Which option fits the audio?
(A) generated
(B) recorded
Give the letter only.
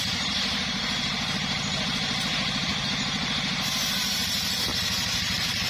A